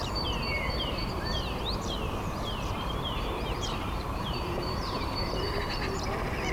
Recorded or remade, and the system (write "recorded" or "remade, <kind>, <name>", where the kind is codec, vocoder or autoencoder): remade, vocoder, BigVGAN v2